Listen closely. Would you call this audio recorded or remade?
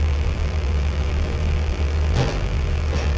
remade